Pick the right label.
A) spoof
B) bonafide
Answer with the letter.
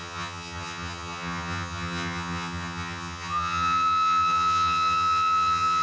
A